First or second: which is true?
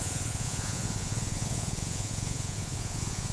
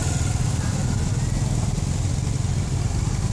second